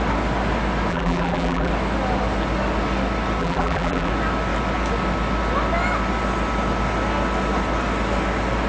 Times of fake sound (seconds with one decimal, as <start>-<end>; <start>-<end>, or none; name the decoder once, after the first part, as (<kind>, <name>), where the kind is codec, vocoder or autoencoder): 0.9-1.7 (vocoder, BigVGAN v2); 3.4-4.1